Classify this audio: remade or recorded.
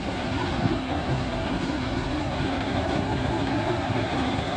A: remade